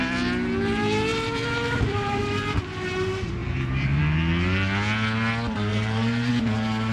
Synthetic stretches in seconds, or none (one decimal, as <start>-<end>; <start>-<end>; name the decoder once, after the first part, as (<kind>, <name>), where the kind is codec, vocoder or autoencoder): 1.1-2.9 (vocoder, BigVGAN v2); 3.4-4.0; 5.7-6.3